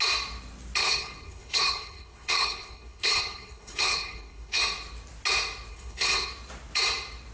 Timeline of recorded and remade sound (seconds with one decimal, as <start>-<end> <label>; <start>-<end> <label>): 0.0-0.8 recorded; 0.8-4.6 remade; 4.6-5.7 recorded; 5.7-6.3 remade; 6.3-7.3 recorded